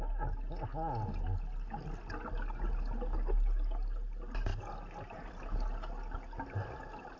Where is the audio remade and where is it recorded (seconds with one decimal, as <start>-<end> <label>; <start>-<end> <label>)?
0.0-7.2 recorded